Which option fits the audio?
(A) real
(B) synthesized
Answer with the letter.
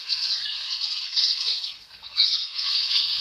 B